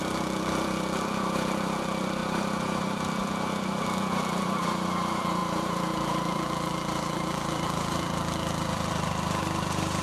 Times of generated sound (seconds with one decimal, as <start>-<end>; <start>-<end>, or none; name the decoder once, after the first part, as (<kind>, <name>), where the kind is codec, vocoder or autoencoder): 0.0-10.0 (vocoder, BigVGAN v2)